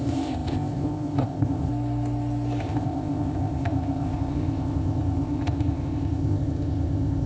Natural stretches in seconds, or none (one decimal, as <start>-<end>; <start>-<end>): 1.7-2.6